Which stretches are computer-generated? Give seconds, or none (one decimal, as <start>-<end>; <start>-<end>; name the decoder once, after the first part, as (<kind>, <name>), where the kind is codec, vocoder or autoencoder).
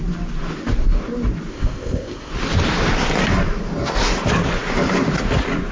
1.5-2.3 (codec, ZipCodec)